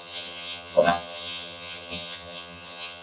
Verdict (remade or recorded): remade